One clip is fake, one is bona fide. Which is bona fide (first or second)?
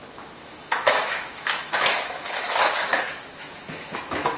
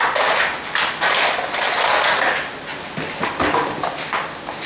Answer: second